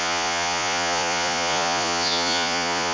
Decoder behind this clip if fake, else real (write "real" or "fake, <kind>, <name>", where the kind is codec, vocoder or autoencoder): fake, vocoder, Vocos